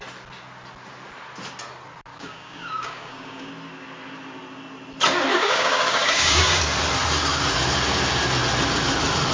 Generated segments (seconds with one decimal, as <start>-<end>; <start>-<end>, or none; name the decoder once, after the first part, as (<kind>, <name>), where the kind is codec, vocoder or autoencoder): 2.1-3.5 (codec, DAC); 5.3-6.6